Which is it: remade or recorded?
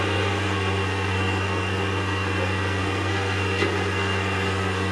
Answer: remade